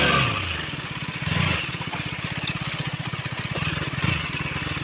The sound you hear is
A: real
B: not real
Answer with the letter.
A